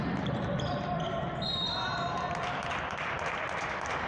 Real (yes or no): yes